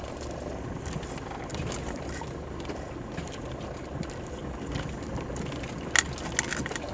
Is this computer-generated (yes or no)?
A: no